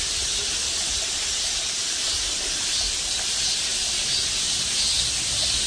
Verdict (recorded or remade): recorded